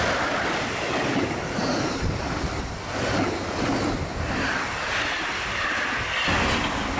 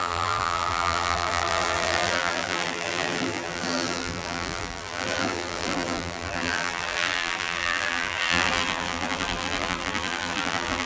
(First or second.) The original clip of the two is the first